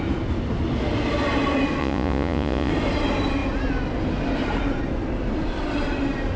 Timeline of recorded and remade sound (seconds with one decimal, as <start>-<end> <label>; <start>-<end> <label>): 0.0-1.8 recorded; 1.8-2.7 remade; 2.7-6.4 recorded